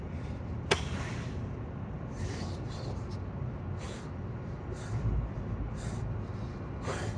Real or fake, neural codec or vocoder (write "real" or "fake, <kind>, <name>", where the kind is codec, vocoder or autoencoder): real